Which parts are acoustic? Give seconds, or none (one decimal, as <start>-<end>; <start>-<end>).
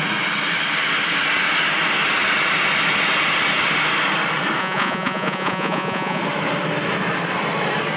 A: 0.0-4.6; 6.2-8.0